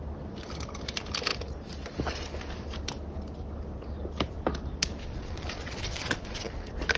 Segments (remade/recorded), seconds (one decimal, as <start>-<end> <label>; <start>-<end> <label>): 0.0-5.0 recorded; 5.0-6.5 remade; 6.5-7.0 recorded